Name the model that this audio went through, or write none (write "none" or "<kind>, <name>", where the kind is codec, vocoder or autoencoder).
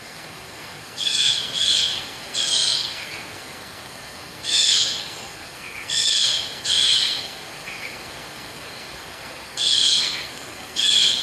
codec, SNAC